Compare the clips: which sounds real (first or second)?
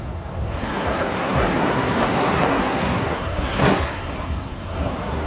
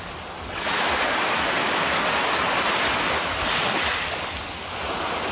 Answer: second